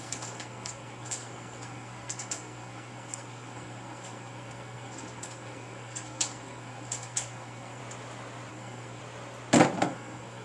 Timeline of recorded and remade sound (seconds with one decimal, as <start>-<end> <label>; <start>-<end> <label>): 0.0-7.8 remade; 7.8-8.5 recorded; 8.5-9.0 remade; 9.0-9.8 recorded; 9.8-10.4 remade